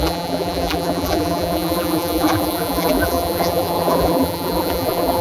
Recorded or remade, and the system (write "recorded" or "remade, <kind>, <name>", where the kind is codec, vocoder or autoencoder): remade, vocoder, BigVGAN v2